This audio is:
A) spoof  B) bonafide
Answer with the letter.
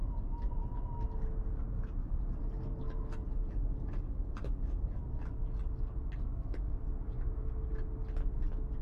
B